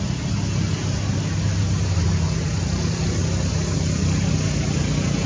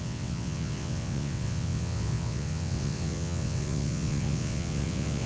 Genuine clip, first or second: first